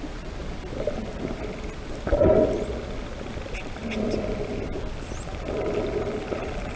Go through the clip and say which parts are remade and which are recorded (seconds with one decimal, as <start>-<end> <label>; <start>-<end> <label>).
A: 0.0-0.4 remade; 0.4-3.0 recorded; 3.0-3.8 remade; 3.8-4.4 recorded; 4.4-6.8 remade